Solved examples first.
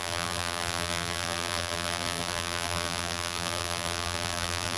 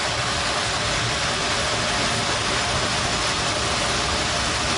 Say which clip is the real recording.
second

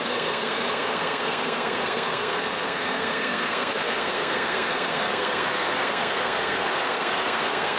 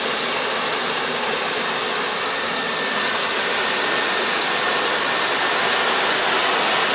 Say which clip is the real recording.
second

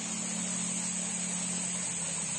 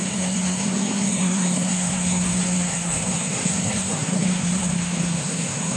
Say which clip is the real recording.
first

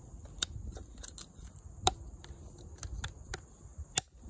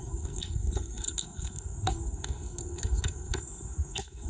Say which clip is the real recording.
first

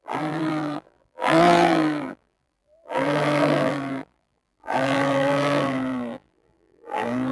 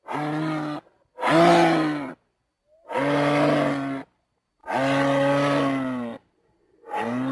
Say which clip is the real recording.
second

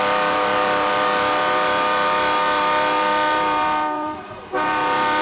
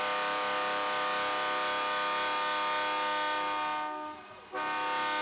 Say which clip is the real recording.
second